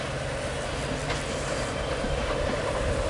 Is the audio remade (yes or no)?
no